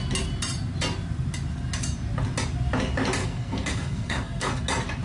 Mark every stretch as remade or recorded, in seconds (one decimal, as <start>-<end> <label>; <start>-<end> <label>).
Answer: 0.0-3.2 recorded; 3.2-4.6 remade; 4.6-5.0 recorded